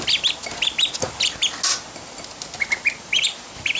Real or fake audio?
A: real